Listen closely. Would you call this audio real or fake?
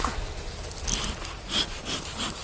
real